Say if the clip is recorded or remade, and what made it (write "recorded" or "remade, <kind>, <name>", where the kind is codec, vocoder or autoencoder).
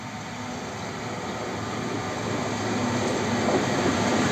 recorded